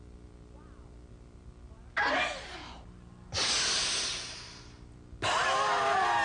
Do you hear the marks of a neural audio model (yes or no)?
no